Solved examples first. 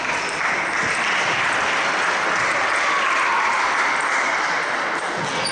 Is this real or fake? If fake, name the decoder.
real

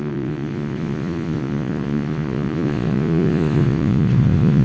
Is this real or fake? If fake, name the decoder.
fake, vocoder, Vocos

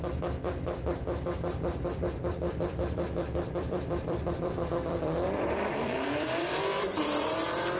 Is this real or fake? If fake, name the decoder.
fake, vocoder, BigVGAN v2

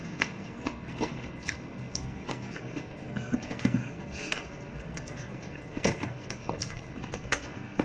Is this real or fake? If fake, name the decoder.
fake, codec, SNAC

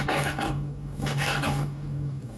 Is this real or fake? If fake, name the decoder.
fake, codec, DAC